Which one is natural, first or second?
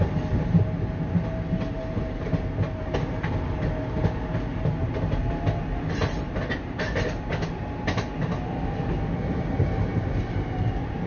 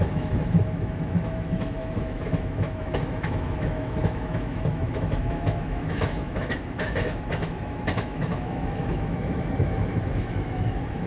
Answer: first